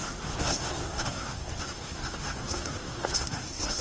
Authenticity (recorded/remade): remade